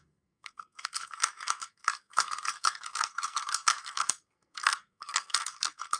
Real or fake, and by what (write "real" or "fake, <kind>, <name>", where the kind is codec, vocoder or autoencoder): fake, codec, SNAC